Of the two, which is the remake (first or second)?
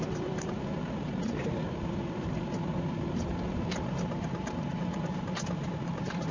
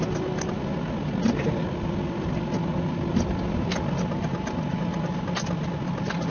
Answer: first